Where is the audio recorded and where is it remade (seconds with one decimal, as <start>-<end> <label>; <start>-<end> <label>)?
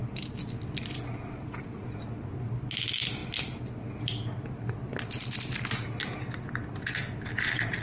0.0-7.8 recorded